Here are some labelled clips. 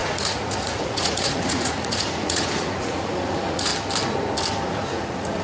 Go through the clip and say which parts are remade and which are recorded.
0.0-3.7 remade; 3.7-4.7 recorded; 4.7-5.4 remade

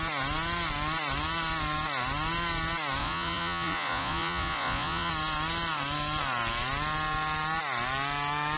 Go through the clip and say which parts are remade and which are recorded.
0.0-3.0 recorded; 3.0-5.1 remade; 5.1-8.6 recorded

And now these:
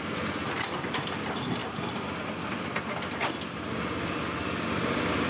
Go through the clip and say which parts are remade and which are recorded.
0.0-5.3 recorded